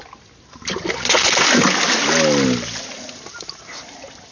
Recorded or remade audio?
recorded